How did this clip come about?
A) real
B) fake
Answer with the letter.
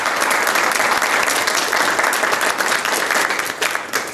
A